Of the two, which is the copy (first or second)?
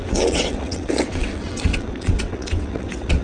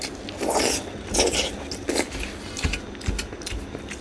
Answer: first